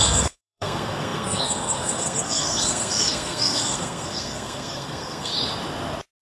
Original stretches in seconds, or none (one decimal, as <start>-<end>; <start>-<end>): 5.3-6.2